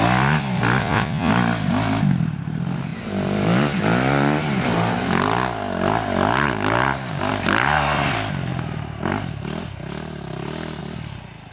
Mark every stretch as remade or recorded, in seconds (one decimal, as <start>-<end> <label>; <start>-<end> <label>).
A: 0.0-0.8 recorded; 0.8-1.3 remade; 1.3-11.5 recorded